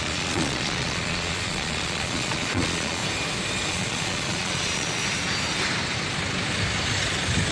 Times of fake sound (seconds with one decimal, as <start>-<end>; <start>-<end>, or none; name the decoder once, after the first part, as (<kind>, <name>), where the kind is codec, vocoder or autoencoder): 0.0-3.0 (vocoder, Vocos); 3.7-5.0